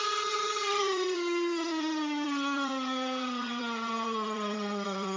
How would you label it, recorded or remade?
remade